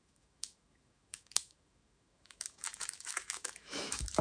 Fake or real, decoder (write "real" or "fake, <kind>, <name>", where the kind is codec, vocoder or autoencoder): fake, autoencoder, DAC-VAE